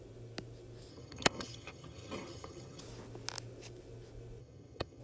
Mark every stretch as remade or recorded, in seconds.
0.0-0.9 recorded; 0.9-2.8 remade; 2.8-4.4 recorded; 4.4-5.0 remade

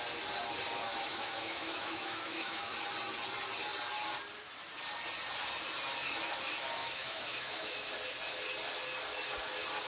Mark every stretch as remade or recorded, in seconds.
0.0-0.9 recorded; 0.9-2.8 remade; 2.8-6.8 recorded; 6.8-7.9 remade; 7.9-9.9 recorded

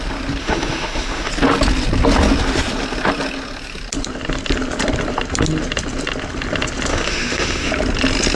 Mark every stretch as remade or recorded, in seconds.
0.0-0.4 recorded; 0.4-1.3 remade; 1.3-6.9 recorded; 6.9-7.7 remade; 7.7-8.3 recorded